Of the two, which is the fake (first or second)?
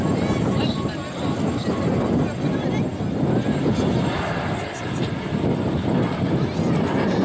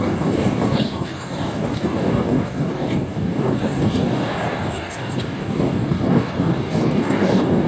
second